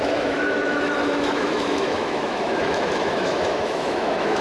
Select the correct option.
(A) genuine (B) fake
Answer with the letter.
B